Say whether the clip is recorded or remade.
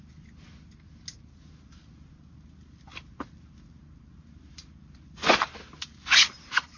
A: recorded